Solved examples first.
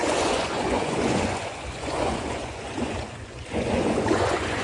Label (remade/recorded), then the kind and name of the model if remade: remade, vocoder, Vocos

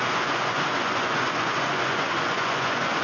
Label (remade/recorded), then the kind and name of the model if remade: remade, vocoder, Vocos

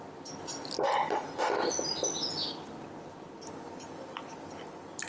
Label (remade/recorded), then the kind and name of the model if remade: recorded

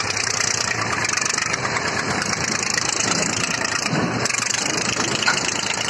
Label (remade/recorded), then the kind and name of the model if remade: remade, vocoder, BigVGAN v2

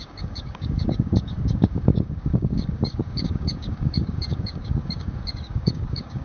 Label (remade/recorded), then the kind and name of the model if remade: remade, codec, DAC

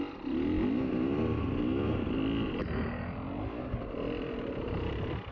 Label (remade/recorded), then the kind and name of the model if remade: recorded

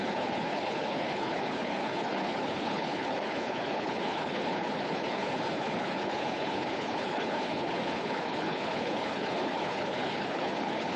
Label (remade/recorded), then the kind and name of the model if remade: remade, codec, HILCodec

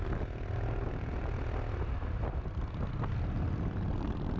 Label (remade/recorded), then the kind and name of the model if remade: recorded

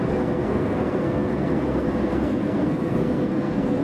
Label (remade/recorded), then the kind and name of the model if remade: remade, codec, SNAC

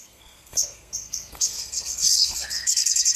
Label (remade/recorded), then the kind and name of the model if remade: remade, codec, SNAC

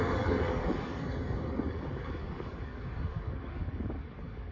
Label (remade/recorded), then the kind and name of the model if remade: remade, codec, DAC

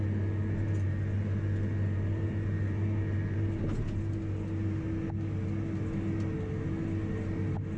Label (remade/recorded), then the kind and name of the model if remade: recorded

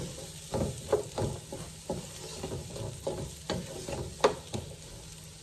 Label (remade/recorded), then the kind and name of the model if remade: recorded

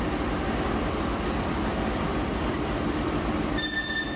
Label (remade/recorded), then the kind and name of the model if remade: recorded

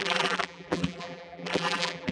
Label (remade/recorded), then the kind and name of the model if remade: remade, vocoder, BigVGAN v2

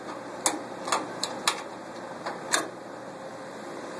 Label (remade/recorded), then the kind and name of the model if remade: recorded